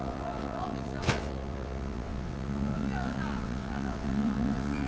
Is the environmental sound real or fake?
fake